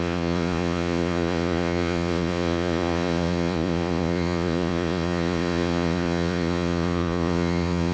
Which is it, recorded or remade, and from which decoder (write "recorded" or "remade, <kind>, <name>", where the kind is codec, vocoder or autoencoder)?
remade, vocoder, Vocos